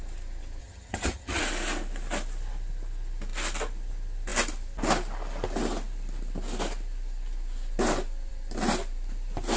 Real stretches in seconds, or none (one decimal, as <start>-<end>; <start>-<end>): 0.0-0.6; 1.4-9.6